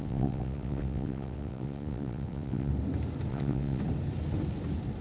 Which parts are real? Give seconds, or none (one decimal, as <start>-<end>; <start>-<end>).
2.7-3.3; 3.8-5.0